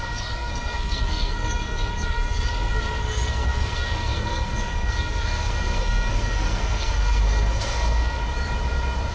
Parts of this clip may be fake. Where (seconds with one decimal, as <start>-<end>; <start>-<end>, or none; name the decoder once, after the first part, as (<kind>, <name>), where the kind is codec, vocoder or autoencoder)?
0.0-8.2 (codec, SNAC)